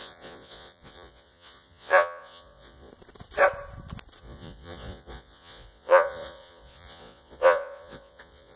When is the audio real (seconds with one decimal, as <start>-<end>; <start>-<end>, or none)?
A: 2.9-4.2